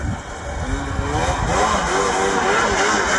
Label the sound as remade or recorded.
recorded